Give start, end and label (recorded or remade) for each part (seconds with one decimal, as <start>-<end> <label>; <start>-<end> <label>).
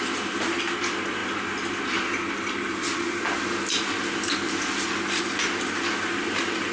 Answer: 0.0-6.7 recorded